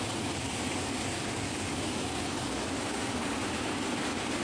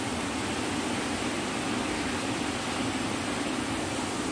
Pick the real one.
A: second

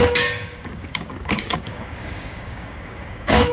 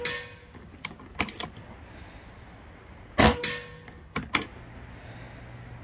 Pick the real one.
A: second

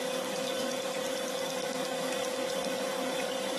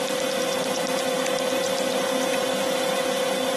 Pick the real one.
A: second